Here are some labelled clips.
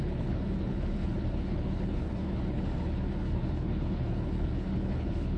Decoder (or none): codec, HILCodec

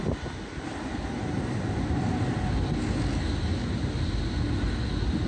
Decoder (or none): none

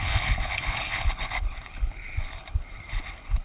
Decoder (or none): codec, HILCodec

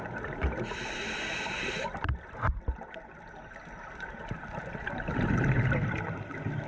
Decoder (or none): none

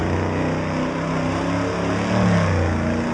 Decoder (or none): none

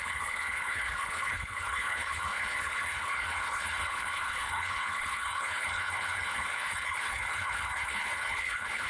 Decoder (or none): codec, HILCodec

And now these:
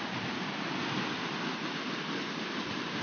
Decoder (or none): none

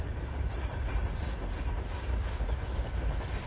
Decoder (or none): none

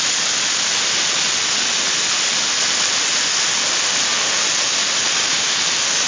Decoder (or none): none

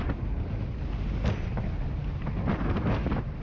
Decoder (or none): none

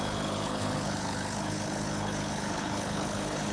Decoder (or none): codec, HILCodec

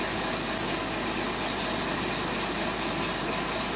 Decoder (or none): none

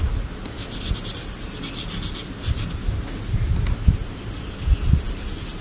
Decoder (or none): none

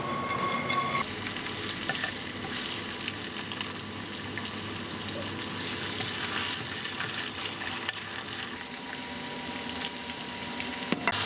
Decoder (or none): none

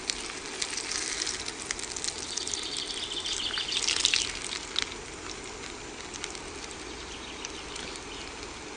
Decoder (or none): none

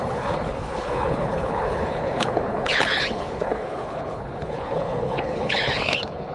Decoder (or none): codec, HILCodec